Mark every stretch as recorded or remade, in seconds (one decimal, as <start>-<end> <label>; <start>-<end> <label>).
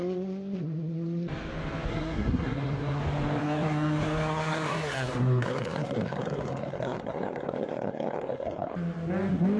0.0-1.9 recorded; 1.9-3.0 remade; 3.0-3.4 recorded; 3.4-8.7 remade; 8.7-9.6 recorded